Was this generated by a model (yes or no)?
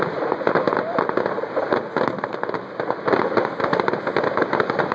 no